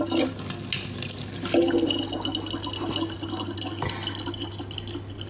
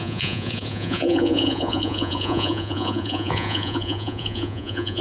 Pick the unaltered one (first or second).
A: first